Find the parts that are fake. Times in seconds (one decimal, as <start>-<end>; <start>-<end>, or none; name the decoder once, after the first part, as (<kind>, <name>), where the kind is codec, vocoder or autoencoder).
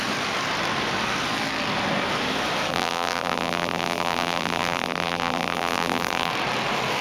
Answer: 2.7-6.3 (vocoder, BigVGAN v2)